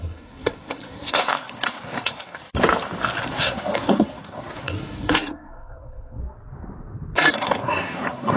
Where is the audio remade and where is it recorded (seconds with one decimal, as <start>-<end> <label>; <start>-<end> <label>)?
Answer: 0.0-2.4 remade; 2.4-3.2 recorded; 3.2-6.2 remade; 6.2-7.3 recorded; 7.3-8.4 remade

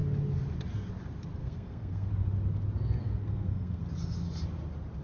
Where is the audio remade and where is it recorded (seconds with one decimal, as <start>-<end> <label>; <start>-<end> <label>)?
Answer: 0.0-1.4 recorded; 1.4-2.1 remade; 2.1-3.0 recorded; 3.0-3.8 remade; 3.8-5.0 recorded